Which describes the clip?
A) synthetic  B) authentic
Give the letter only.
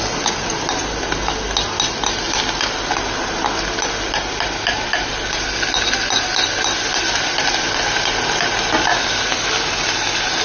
B